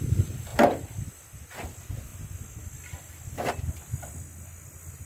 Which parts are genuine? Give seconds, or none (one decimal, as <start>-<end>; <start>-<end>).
0.0-5.1